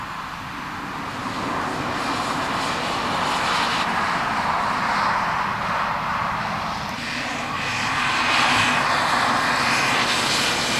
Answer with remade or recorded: recorded